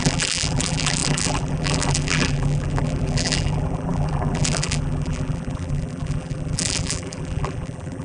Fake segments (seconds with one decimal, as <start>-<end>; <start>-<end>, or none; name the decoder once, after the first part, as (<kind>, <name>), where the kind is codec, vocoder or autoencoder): 0.0-8.0 (vocoder, BigVGAN v2)